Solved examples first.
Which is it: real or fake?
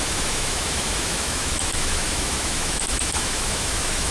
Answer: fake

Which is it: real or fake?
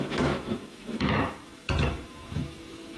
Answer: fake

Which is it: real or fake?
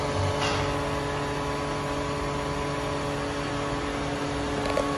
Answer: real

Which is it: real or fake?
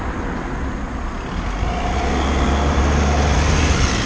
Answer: real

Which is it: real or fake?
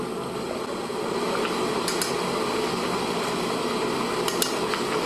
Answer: real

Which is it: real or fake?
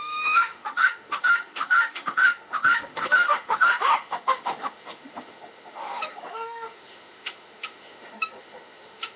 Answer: fake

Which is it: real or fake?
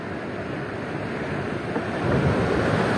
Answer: real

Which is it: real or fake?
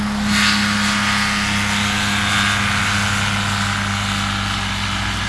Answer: real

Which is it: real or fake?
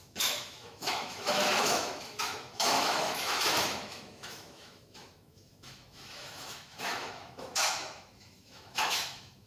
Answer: fake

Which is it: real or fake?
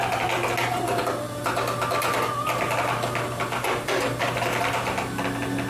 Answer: real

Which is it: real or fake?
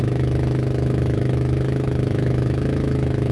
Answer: fake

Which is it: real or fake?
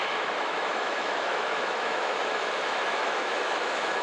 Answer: fake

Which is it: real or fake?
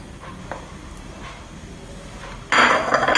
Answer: real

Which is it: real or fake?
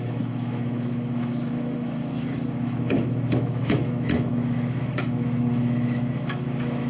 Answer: fake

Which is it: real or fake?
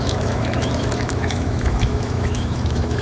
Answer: fake